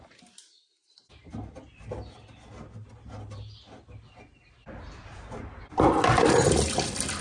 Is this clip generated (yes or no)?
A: no